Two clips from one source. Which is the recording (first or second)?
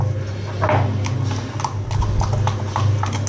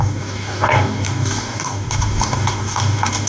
first